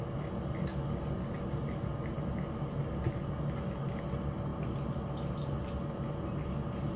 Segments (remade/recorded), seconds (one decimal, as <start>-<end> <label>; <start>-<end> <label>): 0.0-7.0 recorded